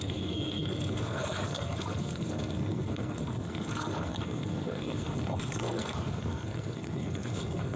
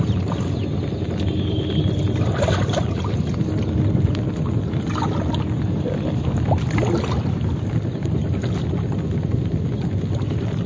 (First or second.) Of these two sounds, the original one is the second